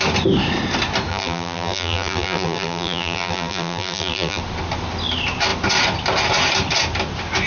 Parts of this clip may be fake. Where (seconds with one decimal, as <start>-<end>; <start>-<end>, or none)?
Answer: 1.1-4.4